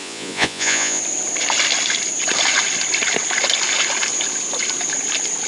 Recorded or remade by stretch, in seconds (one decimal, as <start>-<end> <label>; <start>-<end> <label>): 0.0-1.0 remade; 1.0-5.5 recorded